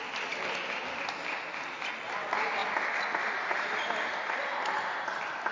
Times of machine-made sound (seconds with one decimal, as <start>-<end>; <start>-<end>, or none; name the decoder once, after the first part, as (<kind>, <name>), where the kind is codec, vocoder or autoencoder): none